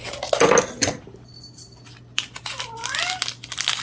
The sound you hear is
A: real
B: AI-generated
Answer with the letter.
A